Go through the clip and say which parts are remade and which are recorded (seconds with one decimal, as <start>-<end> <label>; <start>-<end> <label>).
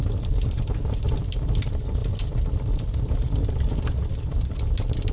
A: 0.0-5.1 recorded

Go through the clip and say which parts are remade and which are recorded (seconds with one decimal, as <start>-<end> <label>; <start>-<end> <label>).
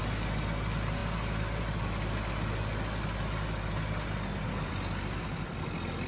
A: 0.0-6.1 recorded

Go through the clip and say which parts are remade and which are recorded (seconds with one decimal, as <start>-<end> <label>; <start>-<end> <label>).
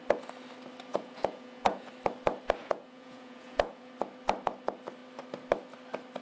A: 0.0-0.9 recorded; 0.9-1.9 remade; 1.9-2.6 recorded; 2.6-3.9 remade; 3.9-6.2 recorded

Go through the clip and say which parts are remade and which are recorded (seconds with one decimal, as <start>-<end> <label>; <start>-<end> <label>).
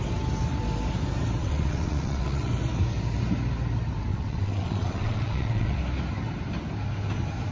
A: 0.0-1.4 recorded; 1.4-2.5 remade; 2.5-4.1 recorded; 4.1-5.8 remade; 5.8-7.5 recorded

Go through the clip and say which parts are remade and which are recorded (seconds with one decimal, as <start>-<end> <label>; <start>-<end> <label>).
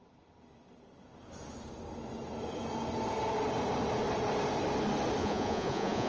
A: 0.0-5.2 recorded; 5.2-6.1 remade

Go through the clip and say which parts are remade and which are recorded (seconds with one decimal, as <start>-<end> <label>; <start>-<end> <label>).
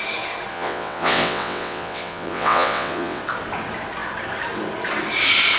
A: 0.0-0.5 recorded; 0.5-3.2 remade; 3.2-5.6 recorded